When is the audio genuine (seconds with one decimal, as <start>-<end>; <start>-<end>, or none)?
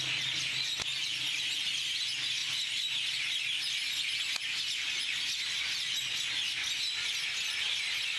0.0-8.2